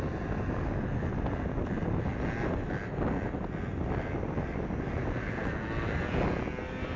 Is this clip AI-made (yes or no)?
no